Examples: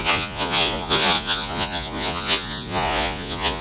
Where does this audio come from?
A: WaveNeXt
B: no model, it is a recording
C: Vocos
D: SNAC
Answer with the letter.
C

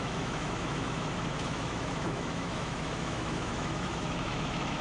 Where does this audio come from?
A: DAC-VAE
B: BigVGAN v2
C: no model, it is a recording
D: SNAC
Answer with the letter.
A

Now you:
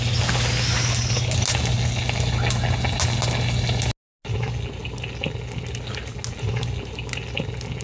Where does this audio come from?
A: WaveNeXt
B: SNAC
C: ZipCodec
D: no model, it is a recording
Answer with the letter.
D